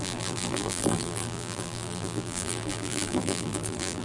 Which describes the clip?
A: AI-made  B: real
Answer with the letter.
A